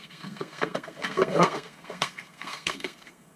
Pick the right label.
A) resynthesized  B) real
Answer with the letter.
A